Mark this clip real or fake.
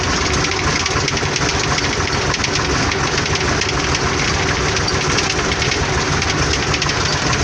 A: real